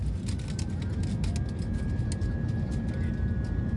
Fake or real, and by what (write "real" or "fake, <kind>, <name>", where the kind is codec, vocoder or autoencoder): real